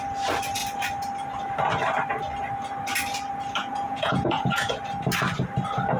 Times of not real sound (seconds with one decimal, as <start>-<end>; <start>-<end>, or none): 3.6-4.7